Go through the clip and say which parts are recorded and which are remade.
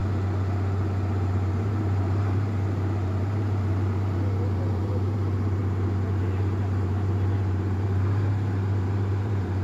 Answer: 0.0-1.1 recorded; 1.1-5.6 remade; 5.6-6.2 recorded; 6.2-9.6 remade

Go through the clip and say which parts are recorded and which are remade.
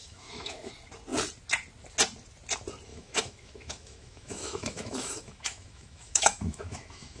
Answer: 0.0-0.7 remade; 0.7-2.9 recorded; 2.9-7.2 remade